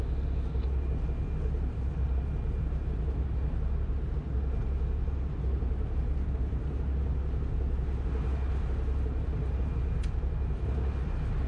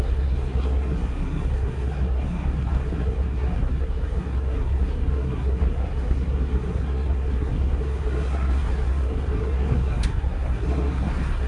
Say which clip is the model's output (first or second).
second